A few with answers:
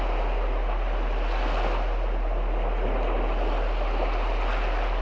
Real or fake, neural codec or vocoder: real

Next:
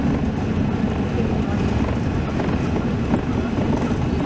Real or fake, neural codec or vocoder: real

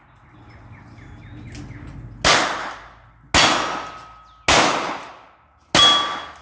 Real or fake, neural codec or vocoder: real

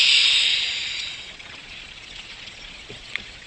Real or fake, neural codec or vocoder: fake, vocoder, Vocos